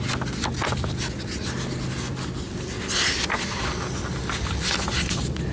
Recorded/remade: recorded